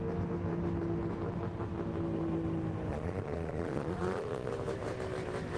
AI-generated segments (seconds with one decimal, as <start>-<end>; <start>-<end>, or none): 2.9-4.5